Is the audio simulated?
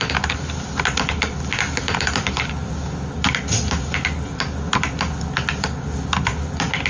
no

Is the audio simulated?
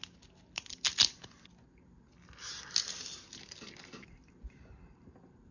no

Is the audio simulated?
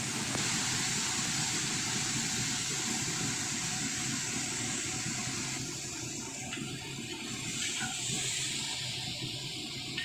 no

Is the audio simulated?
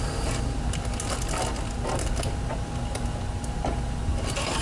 no